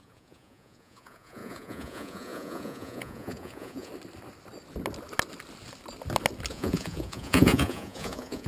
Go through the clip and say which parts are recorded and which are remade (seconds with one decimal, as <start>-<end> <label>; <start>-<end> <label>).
0.0-3.9 remade; 3.9-6.5 recorded; 6.5-8.5 remade